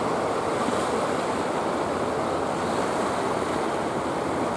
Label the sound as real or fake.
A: real